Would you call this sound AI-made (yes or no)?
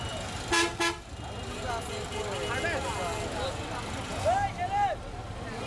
no